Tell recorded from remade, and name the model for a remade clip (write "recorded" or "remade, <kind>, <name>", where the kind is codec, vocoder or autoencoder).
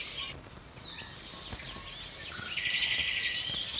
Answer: recorded